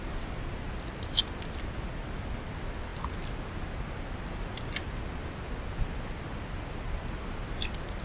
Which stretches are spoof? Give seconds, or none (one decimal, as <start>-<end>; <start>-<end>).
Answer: none